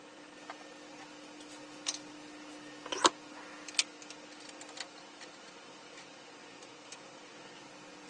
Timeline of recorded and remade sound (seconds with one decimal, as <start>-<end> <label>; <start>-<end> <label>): 0.0-8.1 recorded

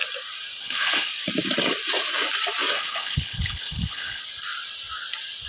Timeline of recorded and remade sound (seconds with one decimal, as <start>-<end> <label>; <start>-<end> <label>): 0.0-0.6 recorded; 0.6-1.1 remade; 1.1-2.7 recorded; 2.7-4.2 remade; 4.2-5.5 recorded

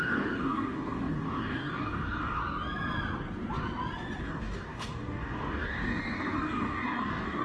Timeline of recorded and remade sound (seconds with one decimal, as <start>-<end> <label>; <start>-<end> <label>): 0.0-2.4 remade; 2.4-4.2 recorded; 4.2-7.4 remade

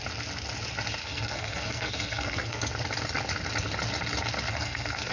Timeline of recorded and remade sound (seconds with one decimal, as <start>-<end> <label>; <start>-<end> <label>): 0.0-1.0 recorded; 1.0-2.7 remade; 2.7-4.5 recorded; 4.5-5.1 remade

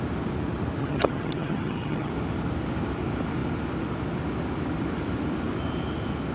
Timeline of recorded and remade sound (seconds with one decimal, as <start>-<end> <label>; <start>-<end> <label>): 0.0-0.8 recorded; 0.8-2.1 remade; 2.1-6.3 recorded